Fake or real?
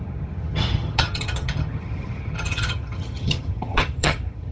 fake